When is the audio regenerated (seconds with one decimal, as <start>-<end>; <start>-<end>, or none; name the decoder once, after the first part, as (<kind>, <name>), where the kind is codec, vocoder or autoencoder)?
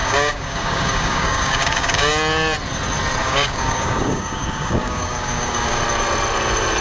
0.0-2.1 (codec, DAC); 3.2-5.8